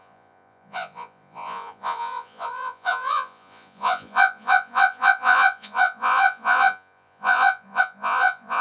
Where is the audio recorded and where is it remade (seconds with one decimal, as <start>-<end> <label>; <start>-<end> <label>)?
0.0-8.6 remade